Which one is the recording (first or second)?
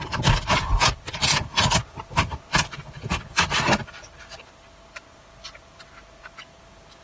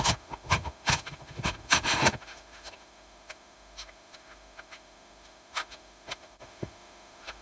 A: first